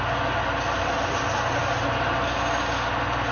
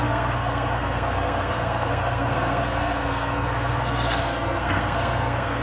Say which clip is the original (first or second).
first